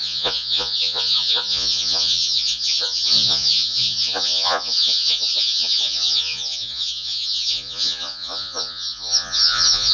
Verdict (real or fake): fake